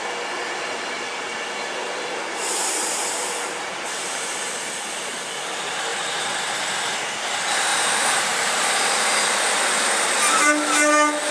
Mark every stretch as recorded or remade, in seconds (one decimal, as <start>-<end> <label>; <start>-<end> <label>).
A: 0.0-1.8 recorded; 1.8-4.8 remade; 4.8-5.9 recorded; 5.9-7.1 remade; 7.1-7.7 recorded; 7.7-9.4 remade; 9.4-11.3 recorded